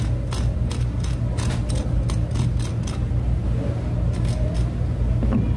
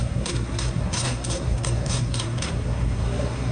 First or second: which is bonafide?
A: first